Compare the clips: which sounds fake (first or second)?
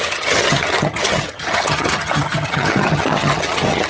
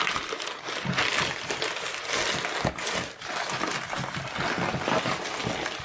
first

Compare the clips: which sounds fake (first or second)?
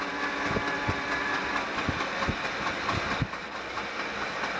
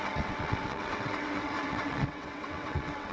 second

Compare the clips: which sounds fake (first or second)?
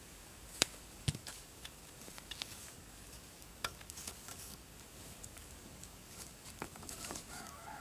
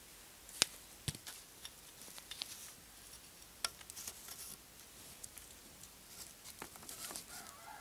first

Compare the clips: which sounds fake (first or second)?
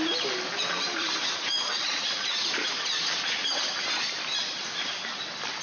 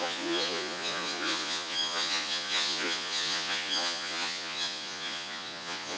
second